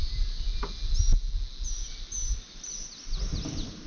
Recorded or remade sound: recorded